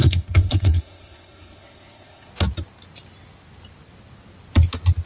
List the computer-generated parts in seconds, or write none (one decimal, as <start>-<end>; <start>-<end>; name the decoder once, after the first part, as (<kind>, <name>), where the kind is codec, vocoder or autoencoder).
0.0-2.3 (codec, SNAC)